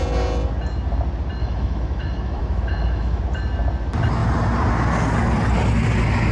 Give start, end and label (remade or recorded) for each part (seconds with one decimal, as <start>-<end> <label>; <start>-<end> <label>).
0.0-1.4 recorded; 1.4-3.2 remade; 3.2-6.3 recorded